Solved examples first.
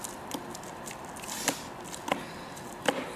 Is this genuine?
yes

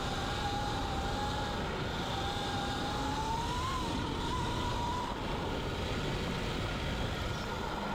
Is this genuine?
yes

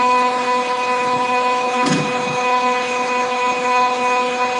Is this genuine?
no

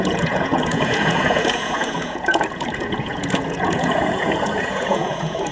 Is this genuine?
no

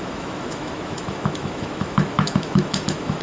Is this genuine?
no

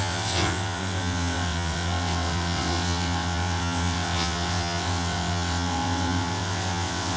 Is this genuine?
no